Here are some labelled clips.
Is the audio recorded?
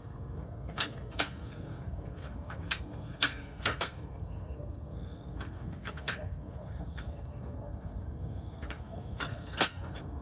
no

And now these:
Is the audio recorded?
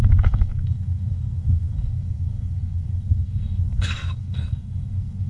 no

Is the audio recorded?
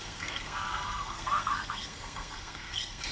no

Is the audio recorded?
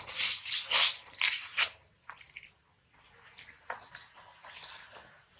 yes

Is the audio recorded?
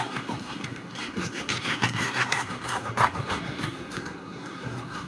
no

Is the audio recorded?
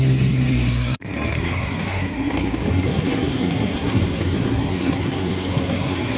no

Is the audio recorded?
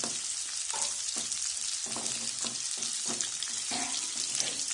yes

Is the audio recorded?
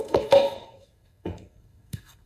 no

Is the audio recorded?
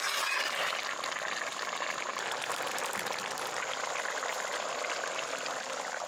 yes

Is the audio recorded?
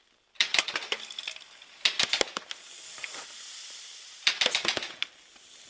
yes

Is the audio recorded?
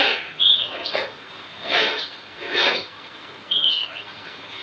no